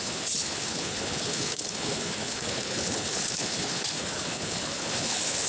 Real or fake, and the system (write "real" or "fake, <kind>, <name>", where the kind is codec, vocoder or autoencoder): fake, codec, HILCodec